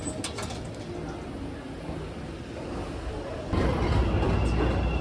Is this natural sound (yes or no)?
yes